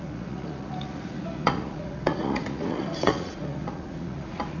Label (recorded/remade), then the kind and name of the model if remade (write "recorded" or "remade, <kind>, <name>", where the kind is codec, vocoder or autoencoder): remade, vocoder, Vocos